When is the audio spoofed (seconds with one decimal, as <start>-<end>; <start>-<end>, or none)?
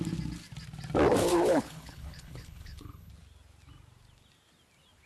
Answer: 1.3-3.1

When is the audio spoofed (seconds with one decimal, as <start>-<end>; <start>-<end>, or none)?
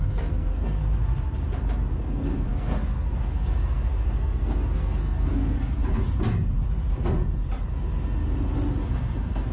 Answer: 0.0-0.8; 1.9-5.8; 8.8-9.5